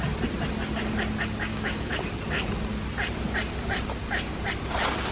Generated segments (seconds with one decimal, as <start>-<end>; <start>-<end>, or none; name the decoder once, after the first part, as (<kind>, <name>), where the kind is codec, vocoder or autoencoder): 1.5-2.0 (autoencoder, DAC-VAE)